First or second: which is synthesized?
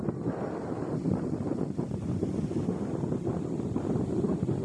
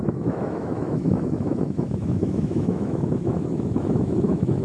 second